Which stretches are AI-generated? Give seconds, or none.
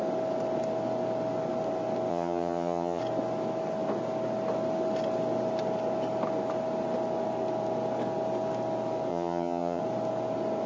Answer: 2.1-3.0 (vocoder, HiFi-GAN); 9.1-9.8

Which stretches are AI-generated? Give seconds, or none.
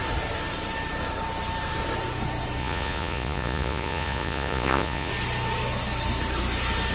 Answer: 2.6-5.1 (vocoder, Vocos)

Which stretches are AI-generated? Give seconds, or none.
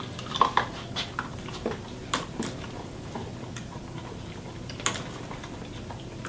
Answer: none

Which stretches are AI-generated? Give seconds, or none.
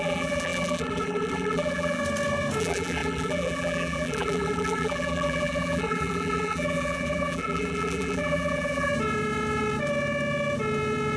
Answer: 0.0-2.0 (vocoder, BigVGAN v2); 2.6-8.9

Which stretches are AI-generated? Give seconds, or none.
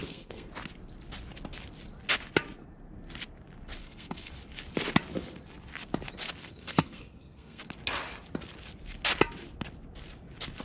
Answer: 0.0-0.5 (codec, SNAC); 3.8-4.3; 6.4-7.6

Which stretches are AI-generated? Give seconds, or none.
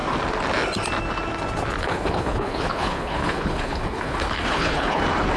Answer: 1.8-5.0 (codec, HILCodec)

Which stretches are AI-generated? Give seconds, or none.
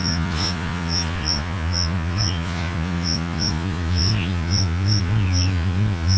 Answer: 0.0-6.2 (vocoder, Vocos)